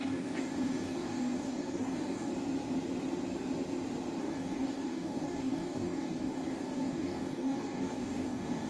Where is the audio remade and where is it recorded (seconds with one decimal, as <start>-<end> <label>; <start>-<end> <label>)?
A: 0.0-2.3 remade; 2.3-4.2 recorded; 4.2-8.7 remade